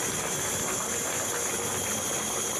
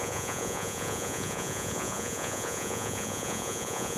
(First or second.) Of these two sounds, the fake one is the second